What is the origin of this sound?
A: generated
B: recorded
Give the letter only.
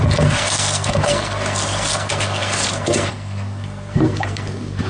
A